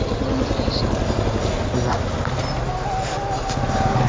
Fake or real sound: real